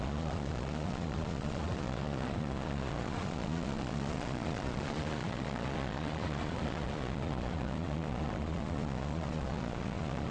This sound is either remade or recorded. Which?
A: remade